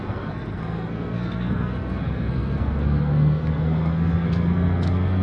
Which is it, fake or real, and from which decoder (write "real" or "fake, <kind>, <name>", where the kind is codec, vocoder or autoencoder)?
fake, codec, SNAC